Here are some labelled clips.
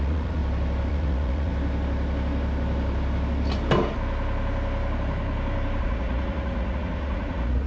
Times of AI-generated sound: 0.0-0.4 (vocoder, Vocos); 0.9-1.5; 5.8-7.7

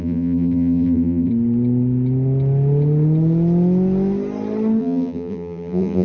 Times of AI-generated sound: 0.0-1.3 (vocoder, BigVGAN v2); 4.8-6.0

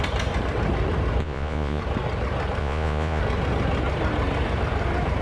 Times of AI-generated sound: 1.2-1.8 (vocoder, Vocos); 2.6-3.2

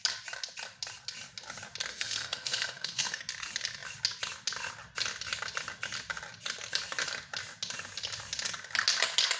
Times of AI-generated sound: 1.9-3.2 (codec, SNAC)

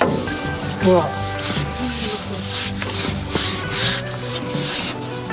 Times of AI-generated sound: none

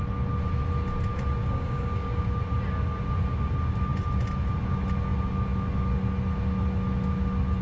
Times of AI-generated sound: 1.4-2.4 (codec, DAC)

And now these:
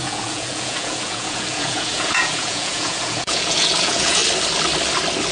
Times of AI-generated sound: 0.0-4.2 (vocoder, Vocos)

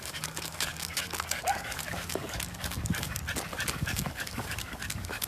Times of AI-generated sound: 0.0-3.2 (codec, DAC); 3.7-5.3